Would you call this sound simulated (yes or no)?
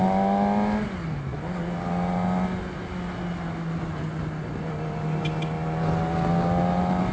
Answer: no